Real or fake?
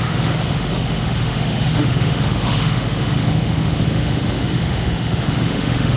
fake